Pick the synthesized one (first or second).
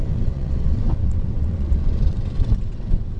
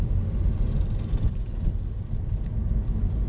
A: first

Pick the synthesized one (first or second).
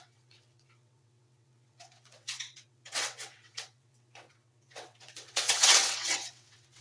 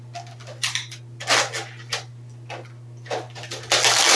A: first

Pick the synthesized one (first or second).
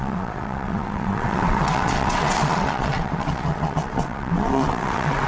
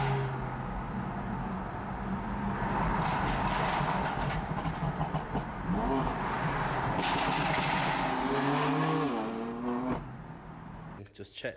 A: first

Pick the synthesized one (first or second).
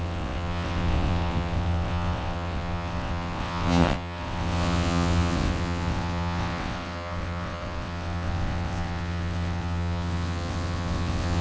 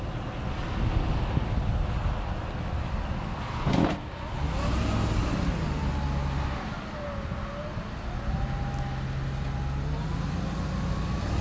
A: first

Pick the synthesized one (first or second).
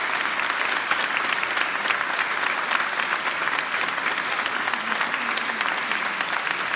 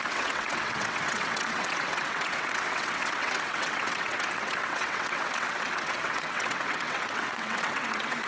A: second